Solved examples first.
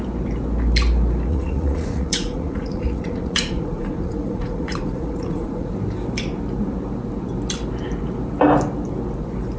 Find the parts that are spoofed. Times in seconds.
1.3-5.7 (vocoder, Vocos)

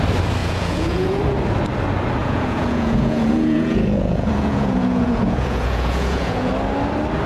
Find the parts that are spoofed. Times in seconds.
0.4-1.2 (vocoder, Vocos); 2.2-6.5

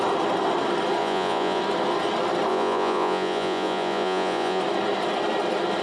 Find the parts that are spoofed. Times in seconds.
1.0-1.6 (vocoder, Vocos); 2.5-4.6